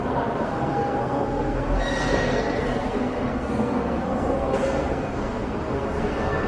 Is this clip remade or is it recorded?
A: remade